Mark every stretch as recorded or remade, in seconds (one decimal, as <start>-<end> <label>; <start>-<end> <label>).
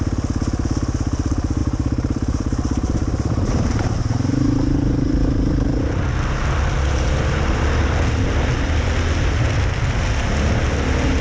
0.0-1.6 recorded; 1.6-5.8 remade; 5.8-11.2 recorded